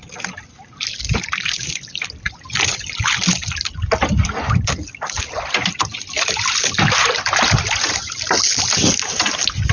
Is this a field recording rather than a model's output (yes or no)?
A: yes